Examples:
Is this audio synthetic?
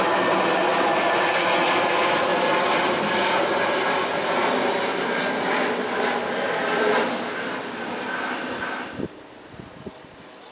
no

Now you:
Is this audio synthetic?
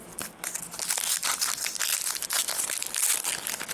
no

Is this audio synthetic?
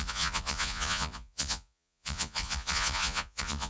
yes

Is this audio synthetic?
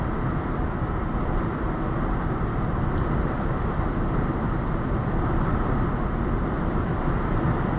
no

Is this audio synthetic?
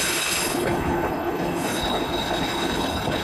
yes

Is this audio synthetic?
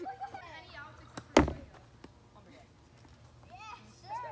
no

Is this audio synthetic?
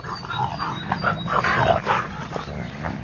no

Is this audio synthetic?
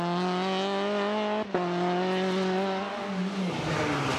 no